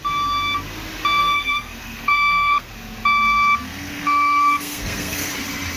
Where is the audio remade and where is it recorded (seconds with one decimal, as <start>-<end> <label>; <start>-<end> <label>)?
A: 0.0-1.2 recorded; 1.2-2.7 remade; 2.7-3.6 recorded; 3.6-5.3 remade; 5.3-5.8 recorded